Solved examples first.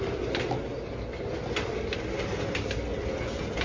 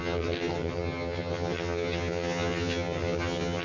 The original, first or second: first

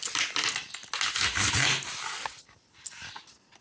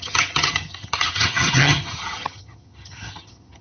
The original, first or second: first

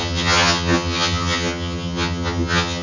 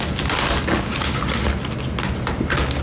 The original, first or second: second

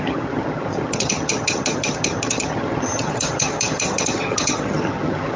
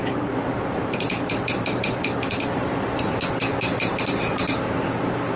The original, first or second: second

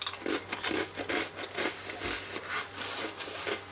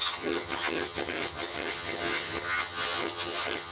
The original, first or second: first